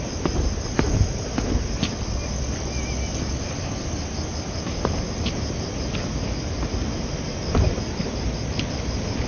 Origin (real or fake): real